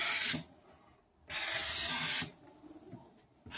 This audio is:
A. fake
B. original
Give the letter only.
B